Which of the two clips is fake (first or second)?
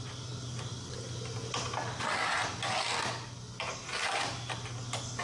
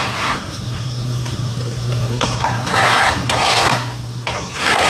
second